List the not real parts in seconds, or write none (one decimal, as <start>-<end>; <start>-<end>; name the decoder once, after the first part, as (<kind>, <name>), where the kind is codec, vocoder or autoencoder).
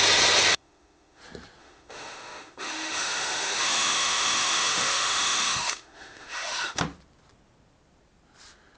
0.5-1.2 (autoencoder, DAC-VAE); 1.6-6.8